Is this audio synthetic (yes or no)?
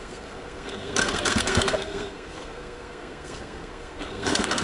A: yes